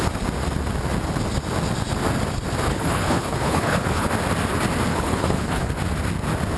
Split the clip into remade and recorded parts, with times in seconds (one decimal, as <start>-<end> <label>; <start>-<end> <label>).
0.0-2.7 recorded; 2.7-4.1 remade; 4.1-4.9 recorded; 4.9-5.7 remade; 5.7-6.6 recorded